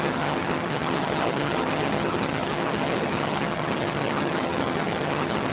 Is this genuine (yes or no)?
no